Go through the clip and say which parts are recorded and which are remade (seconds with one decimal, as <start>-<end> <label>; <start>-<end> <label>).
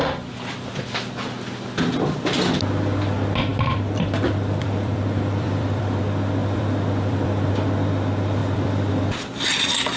0.0-3.5 recorded; 3.5-6.0 remade; 6.0-6.4 recorded; 6.4-7.5 remade; 7.5-8.4 recorded; 8.4-9.0 remade; 9.0-10.0 recorded